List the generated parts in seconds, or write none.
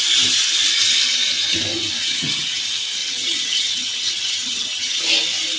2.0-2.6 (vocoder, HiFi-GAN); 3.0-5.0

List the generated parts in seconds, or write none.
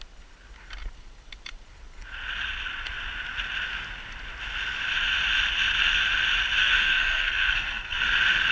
6.6-8.0 (codec, SNAC)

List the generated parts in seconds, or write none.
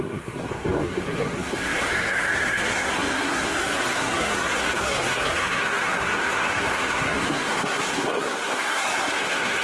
0.0-9.6 (codec, SNAC)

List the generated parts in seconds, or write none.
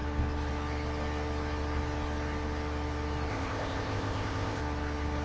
3.3-4.6 (codec, ZipCodec)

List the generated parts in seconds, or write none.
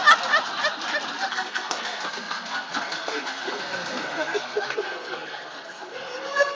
1.3-6.5 (codec, SNAC)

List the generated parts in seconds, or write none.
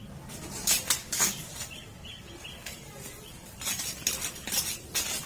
1.0-1.5 (codec, DAC)